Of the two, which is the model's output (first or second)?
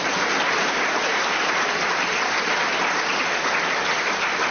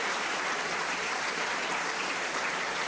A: second